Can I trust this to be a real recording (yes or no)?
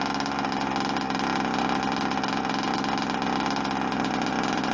yes